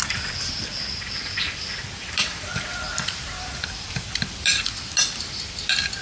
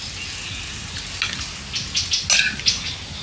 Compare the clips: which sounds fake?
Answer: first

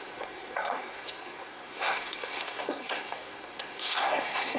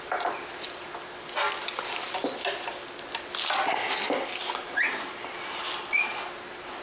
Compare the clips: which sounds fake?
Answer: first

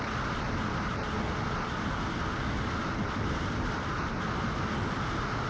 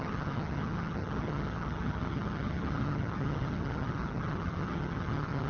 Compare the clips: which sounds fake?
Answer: second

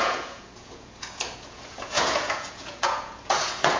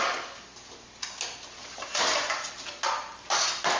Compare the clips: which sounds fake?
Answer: first